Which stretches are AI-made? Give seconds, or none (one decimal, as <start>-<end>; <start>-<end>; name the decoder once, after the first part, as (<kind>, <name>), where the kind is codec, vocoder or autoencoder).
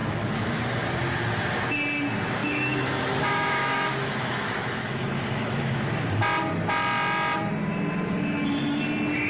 0.0-0.6 (autoencoder, DAC-VAE); 2.4-5.9